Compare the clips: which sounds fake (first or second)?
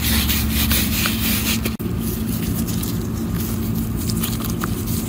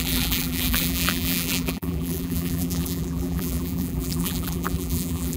second